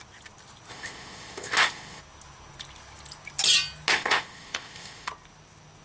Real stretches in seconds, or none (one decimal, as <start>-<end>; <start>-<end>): 0.0-0.7; 2.0-3.9; 5.1-5.8